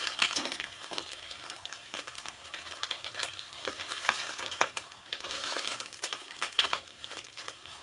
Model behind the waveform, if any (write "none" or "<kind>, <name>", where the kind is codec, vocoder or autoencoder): codec, SNAC